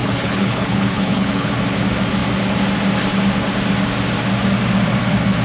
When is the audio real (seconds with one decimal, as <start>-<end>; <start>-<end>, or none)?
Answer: 1.5-5.4

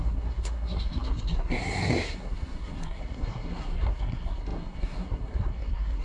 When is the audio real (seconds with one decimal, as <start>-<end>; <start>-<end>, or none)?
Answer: none

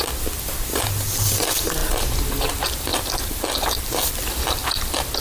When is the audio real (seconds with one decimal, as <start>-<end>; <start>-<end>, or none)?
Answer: 0.0-2.9; 4.4-5.2

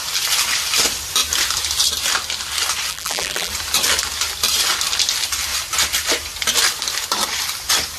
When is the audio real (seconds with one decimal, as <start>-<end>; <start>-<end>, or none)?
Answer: 0.0-2.9; 3.5-8.0

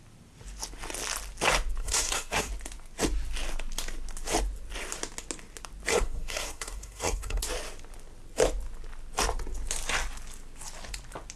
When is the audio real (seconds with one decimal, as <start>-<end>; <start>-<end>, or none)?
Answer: 0.0-1.8; 2.5-5.9; 7.4-11.4